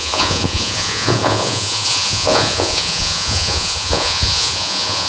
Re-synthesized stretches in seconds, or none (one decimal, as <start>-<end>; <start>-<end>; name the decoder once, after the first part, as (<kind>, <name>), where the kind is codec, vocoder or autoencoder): 0.0-5.1 (vocoder, Vocos)